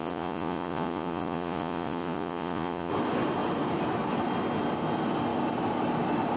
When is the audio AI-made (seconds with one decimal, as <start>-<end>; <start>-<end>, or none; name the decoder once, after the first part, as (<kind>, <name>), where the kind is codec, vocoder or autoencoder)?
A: 0.0-2.9 (vocoder, Vocos)